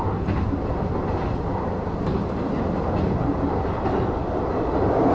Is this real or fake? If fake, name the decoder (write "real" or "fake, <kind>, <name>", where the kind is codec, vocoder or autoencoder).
real